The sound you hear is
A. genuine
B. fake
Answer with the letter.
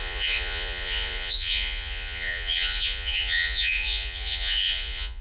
B